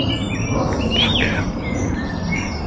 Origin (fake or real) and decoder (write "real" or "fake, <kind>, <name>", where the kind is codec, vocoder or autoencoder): real